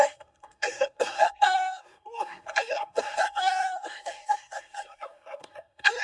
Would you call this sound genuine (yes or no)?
no